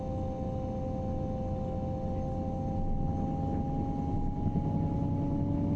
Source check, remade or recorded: recorded